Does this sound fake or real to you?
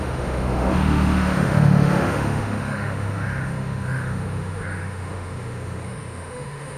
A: fake